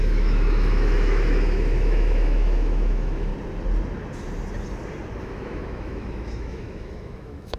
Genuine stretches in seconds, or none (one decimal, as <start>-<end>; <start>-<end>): 3.3-5.2